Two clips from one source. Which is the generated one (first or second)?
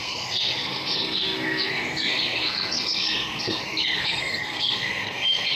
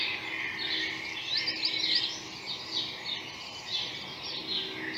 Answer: first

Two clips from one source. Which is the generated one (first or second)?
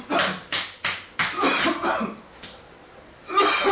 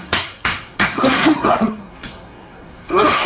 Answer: second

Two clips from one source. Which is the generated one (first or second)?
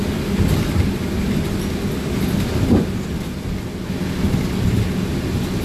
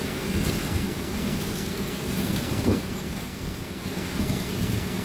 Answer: second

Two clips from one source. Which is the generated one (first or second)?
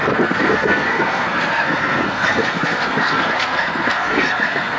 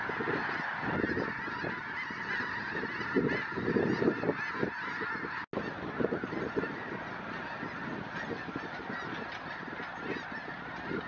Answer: first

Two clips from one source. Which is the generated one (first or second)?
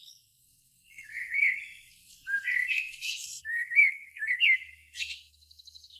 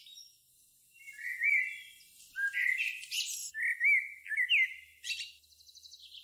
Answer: first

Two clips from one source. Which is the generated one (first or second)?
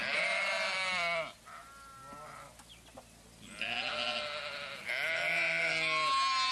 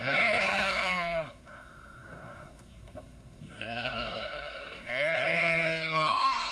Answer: second